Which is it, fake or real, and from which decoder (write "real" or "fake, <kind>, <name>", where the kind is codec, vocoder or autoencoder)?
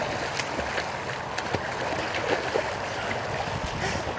real